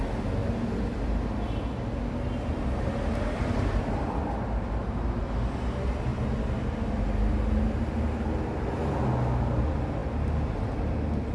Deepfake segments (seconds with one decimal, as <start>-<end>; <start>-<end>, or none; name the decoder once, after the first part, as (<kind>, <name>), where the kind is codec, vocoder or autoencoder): none